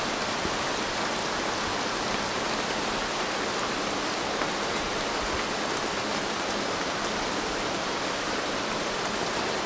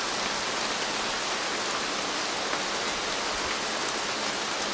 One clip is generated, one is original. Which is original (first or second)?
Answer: second